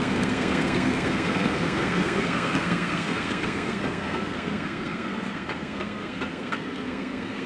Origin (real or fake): fake